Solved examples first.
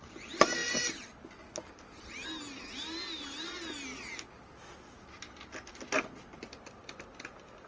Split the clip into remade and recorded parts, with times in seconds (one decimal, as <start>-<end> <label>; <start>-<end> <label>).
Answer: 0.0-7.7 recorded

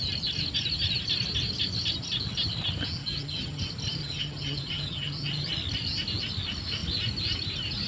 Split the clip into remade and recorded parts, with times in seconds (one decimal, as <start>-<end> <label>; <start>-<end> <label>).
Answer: 0.0-3.0 recorded; 3.0-3.6 remade; 3.6-4.0 recorded; 4.0-5.5 remade; 5.5-7.9 recorded

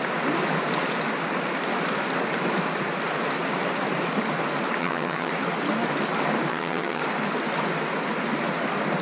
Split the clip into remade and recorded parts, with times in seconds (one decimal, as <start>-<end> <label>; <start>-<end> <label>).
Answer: 0.0-4.8 recorded; 4.8-5.3 remade; 5.3-6.5 recorded; 6.5-7.0 remade; 7.0-9.0 recorded